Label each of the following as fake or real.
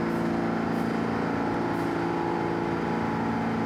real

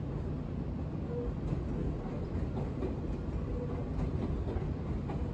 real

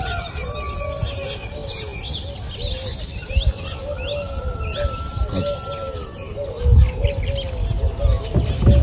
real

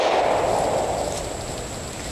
real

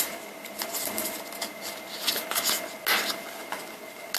real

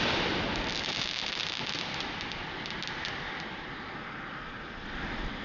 real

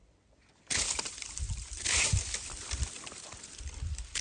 fake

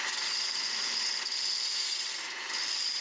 fake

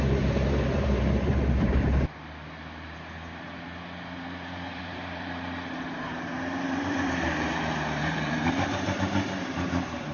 fake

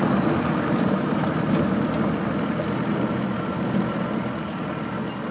real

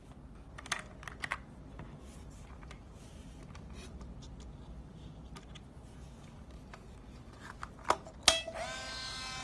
real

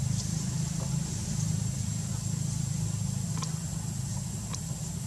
real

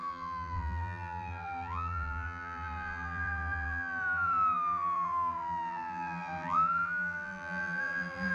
fake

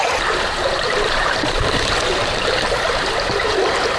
fake